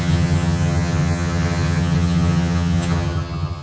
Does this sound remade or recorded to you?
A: remade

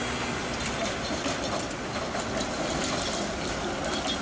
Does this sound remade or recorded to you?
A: recorded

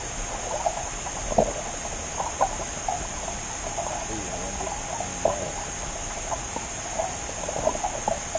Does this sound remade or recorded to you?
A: recorded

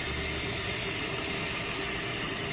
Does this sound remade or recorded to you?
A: recorded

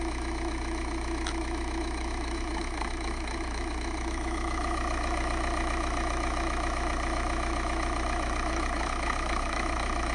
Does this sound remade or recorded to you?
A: remade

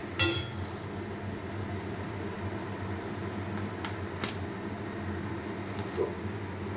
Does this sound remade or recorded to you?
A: recorded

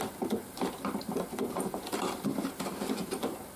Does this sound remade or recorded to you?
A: recorded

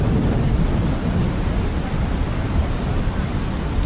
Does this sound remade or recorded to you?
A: remade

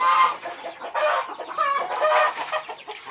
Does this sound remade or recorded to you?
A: recorded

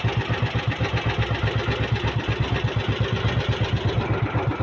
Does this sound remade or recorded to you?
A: recorded